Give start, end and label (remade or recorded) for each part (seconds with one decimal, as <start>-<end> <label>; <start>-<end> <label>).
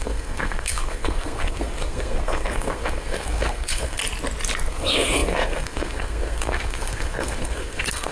0.0-4.0 remade; 4.0-4.7 recorded; 4.7-8.1 remade